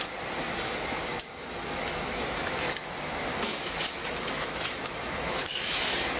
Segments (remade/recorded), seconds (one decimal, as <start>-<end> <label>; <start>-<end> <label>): 0.0-1.1 recorded; 1.1-2.2 remade; 2.2-3.3 recorded; 3.3-5.8 remade; 5.8-6.2 recorded